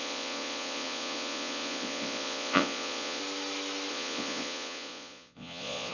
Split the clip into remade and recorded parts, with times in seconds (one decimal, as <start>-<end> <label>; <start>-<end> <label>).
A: 0.0-3.2 remade; 3.2-3.9 recorded; 3.9-5.9 remade